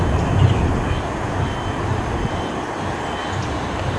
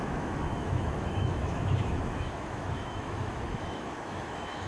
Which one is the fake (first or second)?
second